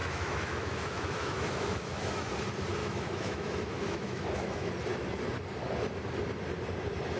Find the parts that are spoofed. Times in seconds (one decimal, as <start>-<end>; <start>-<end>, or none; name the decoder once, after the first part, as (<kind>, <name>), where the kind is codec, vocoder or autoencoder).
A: 0.0-2.3 (autoencoder, DAC-VAE); 2.8-4.7